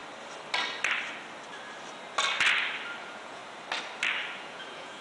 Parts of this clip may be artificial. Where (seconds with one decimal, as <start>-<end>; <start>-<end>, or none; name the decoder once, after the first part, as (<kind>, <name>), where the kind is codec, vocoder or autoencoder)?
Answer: 3.0-3.4 (vocoder, Vocos); 4.4-5.0